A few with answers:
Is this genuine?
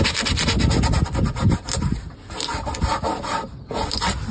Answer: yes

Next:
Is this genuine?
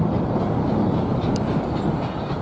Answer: yes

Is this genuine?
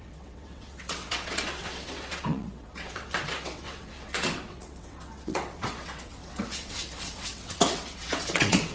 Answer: no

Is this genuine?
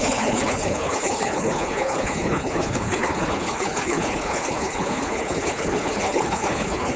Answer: no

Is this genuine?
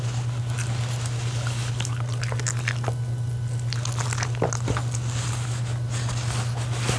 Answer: yes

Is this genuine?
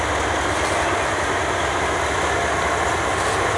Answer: yes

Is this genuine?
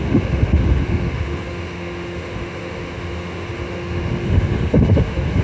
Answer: no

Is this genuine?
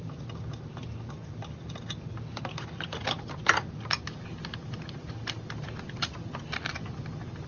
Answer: yes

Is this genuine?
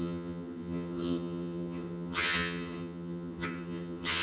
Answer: no